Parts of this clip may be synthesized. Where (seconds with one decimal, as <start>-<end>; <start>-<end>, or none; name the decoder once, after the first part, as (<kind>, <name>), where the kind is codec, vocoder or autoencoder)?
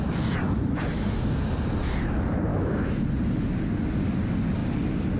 2.5-3.0 (autoencoder, DAC-VAE)